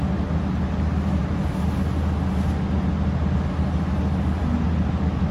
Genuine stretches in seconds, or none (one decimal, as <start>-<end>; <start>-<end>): 0.0-5.3